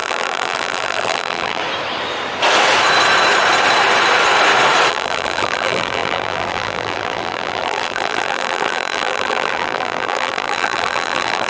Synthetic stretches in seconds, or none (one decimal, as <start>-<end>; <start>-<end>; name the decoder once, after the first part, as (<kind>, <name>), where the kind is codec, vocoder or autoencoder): 0.0-1.6 (vocoder, BigVGAN v2); 4.9-11.5